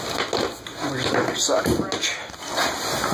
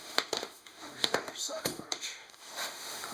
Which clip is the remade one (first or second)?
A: second